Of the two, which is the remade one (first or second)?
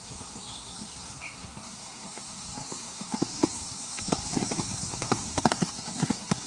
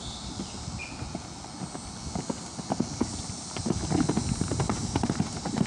first